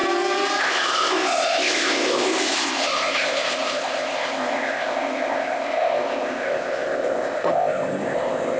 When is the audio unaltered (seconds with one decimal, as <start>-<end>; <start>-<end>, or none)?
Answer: 0.0-0.6